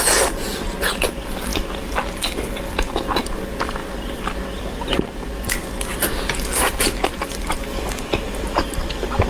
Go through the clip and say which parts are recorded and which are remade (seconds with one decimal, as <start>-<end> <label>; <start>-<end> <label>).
0.0-9.3 recorded